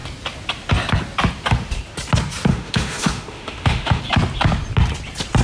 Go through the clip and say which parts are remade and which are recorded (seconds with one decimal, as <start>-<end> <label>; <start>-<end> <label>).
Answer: 0.0-2.5 recorded; 2.5-4.0 remade; 4.0-5.4 recorded